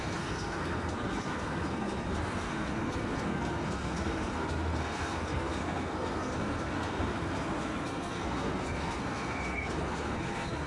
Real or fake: fake